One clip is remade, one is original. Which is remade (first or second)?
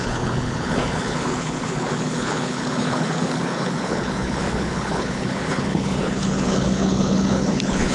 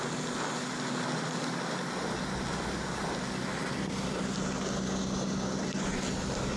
first